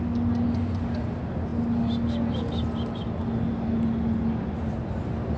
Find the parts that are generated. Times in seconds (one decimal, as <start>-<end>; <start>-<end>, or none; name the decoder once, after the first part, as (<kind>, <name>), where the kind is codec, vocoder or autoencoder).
none